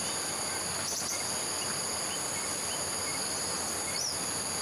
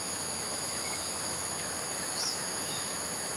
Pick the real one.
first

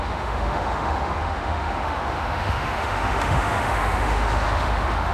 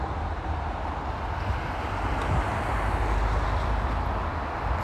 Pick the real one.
second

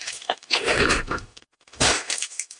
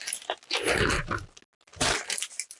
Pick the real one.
second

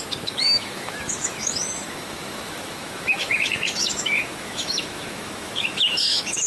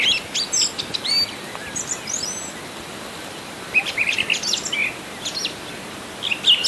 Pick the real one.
second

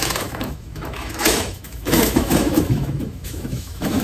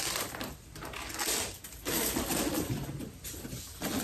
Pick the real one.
second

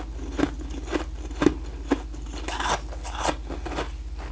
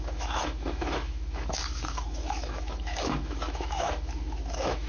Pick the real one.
first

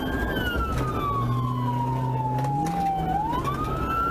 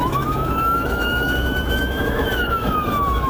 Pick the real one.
first